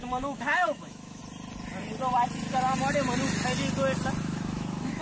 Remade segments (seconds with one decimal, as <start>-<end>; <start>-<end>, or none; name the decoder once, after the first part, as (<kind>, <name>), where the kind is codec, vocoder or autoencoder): 0.0-1.2 (autoencoder, DAC-VAE); 4.2-5.0